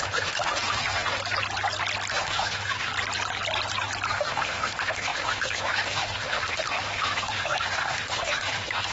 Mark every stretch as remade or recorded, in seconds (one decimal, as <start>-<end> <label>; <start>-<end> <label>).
0.0-1.2 remade; 1.2-2.1 recorded; 2.1-2.9 remade; 2.9-4.1 recorded; 4.1-8.9 remade